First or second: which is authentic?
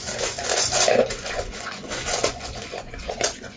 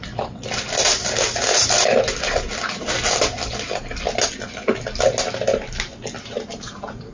second